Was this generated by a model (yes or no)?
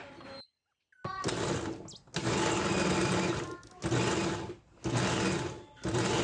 no